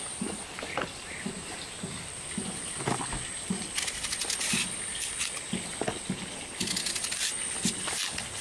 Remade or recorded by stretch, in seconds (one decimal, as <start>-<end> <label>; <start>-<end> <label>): 0.0-8.4 recorded